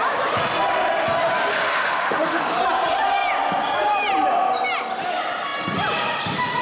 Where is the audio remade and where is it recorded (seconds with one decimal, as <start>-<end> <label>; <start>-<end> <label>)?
0.0-1.5 recorded; 1.5-2.6 remade; 2.6-6.6 recorded

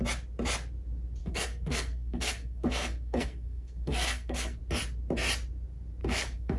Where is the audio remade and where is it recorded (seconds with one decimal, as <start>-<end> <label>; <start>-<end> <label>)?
0.0-1.2 recorded; 1.2-4.6 remade; 4.6-6.0 recorded; 6.0-6.6 remade

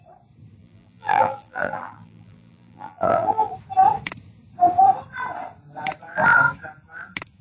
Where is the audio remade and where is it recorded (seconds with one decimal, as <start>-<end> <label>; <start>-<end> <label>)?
0.0-0.6 recorded; 0.6-3.5 remade; 3.5-7.4 recorded

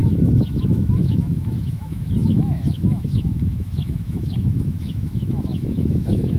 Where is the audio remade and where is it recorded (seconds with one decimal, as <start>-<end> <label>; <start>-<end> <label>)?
0.0-6.4 remade

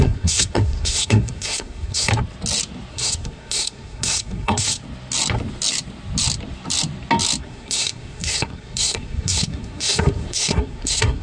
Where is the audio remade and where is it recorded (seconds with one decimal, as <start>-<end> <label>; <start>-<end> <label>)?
0.0-2.1 remade; 2.1-2.9 recorded; 2.9-4.8 remade; 4.8-7.4 recorded; 7.4-11.2 remade